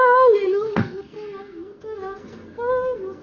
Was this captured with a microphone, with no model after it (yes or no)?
no